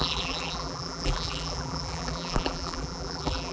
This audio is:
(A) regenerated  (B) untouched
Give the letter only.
A